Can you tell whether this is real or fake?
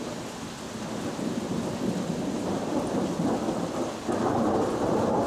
real